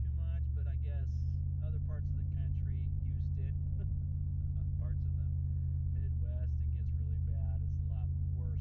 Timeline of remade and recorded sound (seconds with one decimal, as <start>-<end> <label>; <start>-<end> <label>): 0.0-8.6 recorded